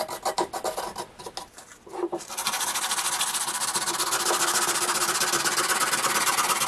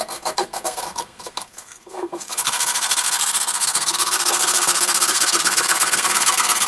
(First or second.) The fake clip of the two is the second